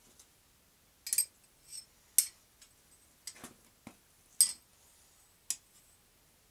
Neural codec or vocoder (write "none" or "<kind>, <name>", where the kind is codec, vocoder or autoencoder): none